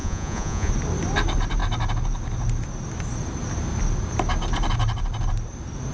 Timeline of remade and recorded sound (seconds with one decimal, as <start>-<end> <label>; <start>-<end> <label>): 0.0-0.7 remade; 0.7-5.9 recorded